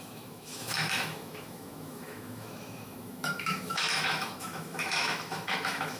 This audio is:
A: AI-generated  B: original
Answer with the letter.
A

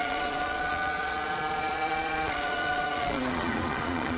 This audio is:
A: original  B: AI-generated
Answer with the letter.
B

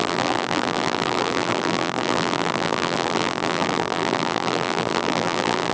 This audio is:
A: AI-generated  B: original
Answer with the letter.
A